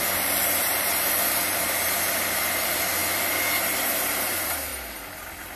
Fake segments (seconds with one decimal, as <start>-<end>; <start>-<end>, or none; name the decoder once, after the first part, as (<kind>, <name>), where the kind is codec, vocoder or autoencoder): 0.0-4.7 (vocoder, BigVGAN v2)